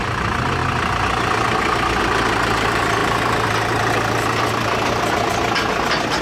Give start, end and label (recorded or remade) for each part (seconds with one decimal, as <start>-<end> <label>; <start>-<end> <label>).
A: 0.0-6.2 recorded